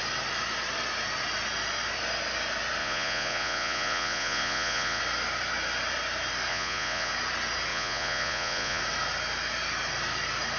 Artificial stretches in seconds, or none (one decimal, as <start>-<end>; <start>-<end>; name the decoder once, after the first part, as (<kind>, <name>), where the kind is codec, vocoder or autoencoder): 2.8-5.0 (vocoder, Vocos); 6.5-7.1; 7.7-8.8